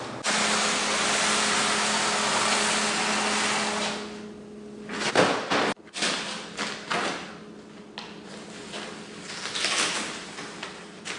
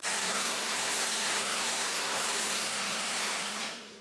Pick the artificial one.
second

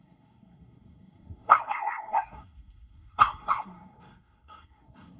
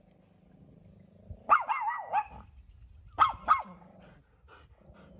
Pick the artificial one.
first